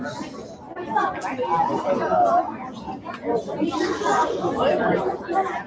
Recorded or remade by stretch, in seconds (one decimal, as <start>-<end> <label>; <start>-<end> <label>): 0.0-5.7 recorded